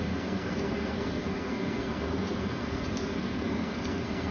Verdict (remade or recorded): remade